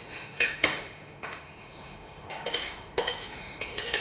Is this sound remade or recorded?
remade